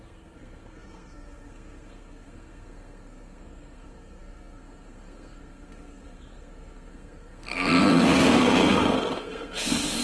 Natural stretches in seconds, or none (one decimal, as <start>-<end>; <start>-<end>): none